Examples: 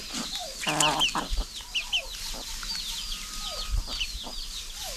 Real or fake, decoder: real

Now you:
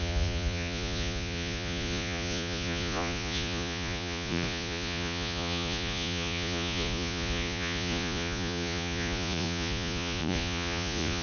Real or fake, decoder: fake, vocoder, Vocos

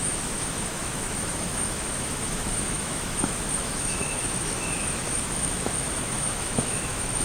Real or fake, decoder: fake, autoencoder, DAC-VAE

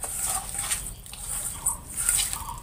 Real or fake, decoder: fake, vocoder, BigVGAN v2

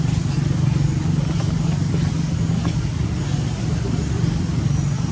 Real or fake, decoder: real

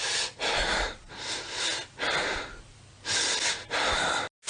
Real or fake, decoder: real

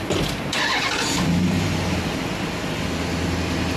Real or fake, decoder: real